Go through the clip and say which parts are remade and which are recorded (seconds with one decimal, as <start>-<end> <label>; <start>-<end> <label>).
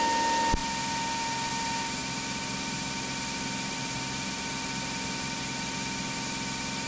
0.0-6.9 recorded